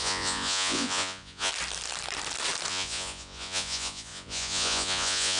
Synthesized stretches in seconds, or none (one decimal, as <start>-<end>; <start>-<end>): 0.0-1.5; 2.7-5.4